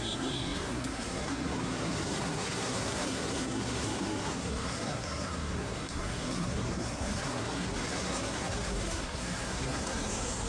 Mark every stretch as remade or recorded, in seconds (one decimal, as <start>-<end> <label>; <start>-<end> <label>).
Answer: 0.0-10.5 remade